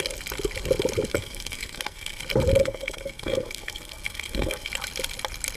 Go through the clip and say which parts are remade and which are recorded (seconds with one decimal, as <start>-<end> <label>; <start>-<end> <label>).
0.0-1.1 recorded; 1.1-2.2 remade; 2.2-2.6 recorded; 2.6-4.7 remade; 4.7-5.6 recorded